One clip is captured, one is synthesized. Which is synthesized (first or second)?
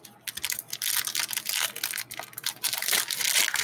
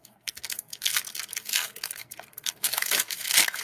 second